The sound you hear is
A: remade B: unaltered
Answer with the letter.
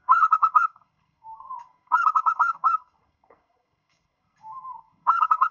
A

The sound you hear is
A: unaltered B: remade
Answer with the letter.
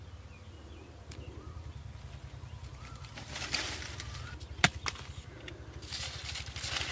A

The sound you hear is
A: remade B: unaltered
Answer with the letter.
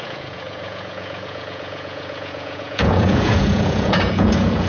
A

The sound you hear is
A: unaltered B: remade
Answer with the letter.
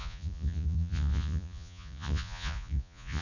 B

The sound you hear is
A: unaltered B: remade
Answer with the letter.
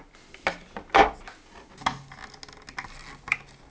A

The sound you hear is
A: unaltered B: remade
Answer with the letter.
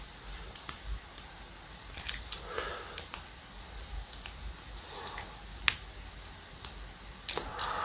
A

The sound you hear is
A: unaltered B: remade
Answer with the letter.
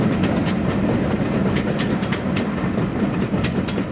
A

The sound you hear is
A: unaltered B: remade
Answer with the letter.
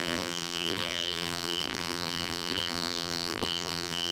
B